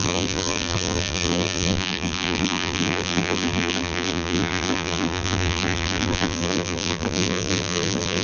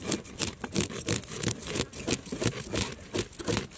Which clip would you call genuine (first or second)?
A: second